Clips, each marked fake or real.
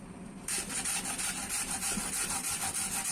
real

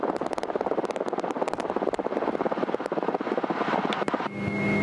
real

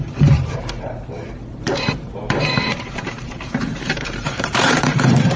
fake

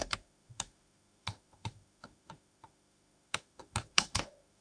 fake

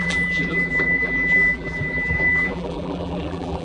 fake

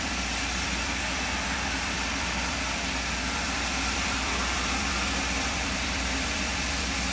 fake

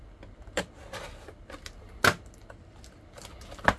real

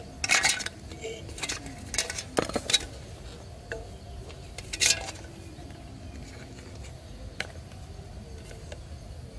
real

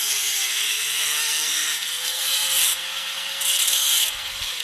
fake